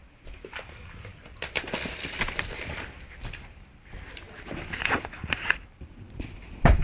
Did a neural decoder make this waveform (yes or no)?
yes